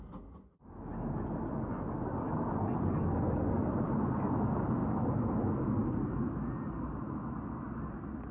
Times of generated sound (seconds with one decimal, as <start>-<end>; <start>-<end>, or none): 4.8-5.5